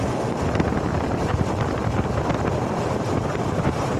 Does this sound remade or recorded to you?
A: recorded